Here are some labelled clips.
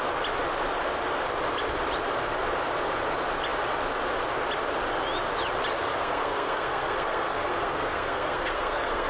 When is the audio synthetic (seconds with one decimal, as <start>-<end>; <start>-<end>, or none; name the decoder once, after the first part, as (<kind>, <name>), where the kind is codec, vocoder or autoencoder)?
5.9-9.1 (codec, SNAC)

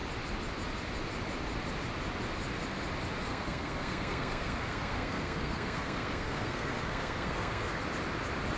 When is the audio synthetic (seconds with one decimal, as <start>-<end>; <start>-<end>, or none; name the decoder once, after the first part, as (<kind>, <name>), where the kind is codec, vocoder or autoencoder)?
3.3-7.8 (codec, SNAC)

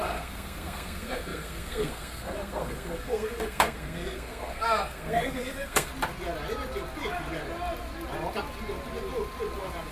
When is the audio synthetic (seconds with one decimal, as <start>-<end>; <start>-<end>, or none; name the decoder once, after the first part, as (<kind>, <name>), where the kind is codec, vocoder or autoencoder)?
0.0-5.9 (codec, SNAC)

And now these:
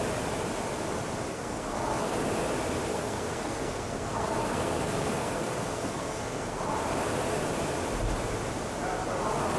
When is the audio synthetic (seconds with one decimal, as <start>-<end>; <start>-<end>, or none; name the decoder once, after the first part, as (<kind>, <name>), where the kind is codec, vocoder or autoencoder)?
1.3-2.1 (codec, SNAC); 2.9-6.6

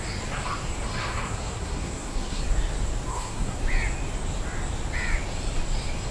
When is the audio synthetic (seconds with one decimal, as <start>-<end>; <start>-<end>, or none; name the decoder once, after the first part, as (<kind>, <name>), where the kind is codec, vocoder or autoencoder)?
1.0-2.4 (codec, SNAC); 3.1-3.6

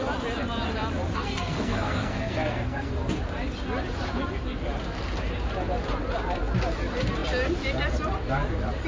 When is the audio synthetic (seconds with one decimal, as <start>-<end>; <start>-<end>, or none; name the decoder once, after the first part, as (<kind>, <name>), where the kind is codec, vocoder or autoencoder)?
1.1-2.9 (codec, SNAC)